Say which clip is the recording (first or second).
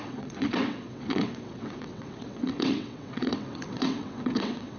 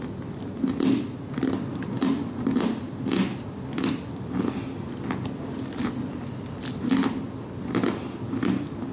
second